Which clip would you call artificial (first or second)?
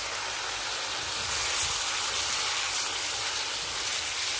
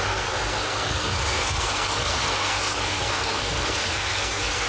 second